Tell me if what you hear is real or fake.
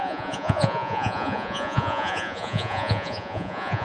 fake